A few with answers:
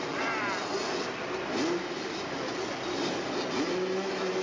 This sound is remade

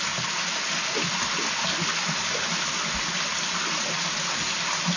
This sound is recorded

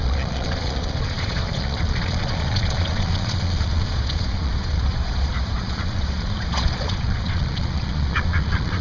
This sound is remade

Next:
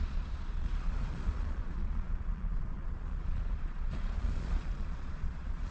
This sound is remade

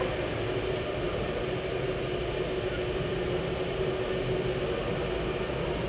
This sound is recorded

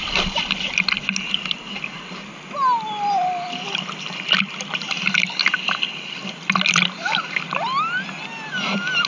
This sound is recorded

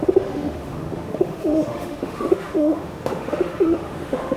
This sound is remade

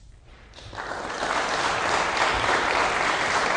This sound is remade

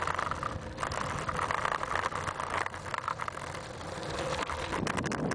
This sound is recorded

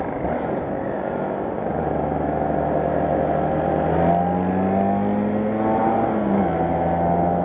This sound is recorded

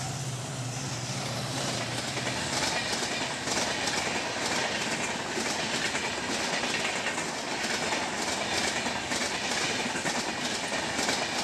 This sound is recorded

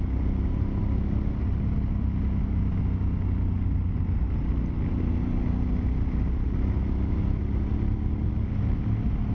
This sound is recorded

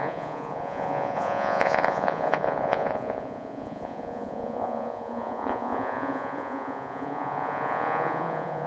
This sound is remade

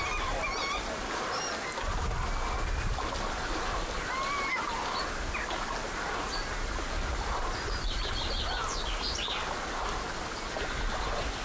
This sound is recorded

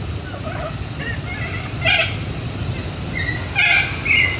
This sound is recorded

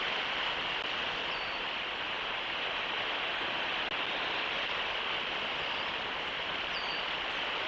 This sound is recorded